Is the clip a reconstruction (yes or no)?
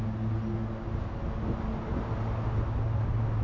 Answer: no